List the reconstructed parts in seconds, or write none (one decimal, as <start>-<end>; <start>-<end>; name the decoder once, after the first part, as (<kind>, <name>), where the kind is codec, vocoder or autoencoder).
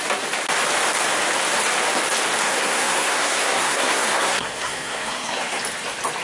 2.4-5.6 (codec, SNAC)